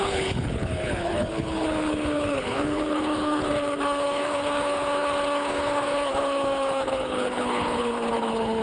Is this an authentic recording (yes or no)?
no